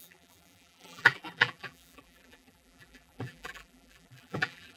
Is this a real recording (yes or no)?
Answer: no